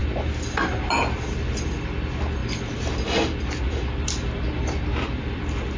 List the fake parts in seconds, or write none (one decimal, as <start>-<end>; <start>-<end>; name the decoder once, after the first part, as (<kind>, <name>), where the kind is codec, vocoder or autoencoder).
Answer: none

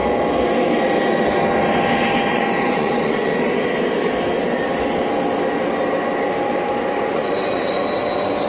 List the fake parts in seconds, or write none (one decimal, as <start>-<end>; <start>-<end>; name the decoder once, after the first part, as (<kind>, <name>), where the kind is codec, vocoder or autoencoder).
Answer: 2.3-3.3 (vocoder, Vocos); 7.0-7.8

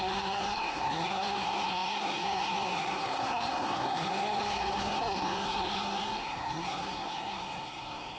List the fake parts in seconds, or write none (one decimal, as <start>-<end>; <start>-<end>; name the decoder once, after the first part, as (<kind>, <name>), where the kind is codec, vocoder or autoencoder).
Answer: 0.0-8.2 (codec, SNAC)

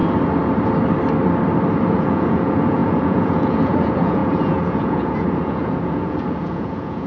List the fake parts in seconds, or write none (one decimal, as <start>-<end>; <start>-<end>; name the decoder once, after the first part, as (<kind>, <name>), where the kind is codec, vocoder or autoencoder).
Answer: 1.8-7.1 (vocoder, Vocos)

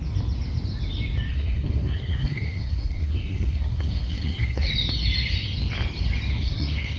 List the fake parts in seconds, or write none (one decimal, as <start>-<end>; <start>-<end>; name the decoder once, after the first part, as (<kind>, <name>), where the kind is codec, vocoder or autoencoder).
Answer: 1.3-4.7 (codec, SNAC); 6.3-7.0